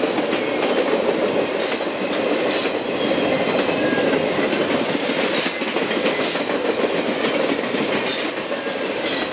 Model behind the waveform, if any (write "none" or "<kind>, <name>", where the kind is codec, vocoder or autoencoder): none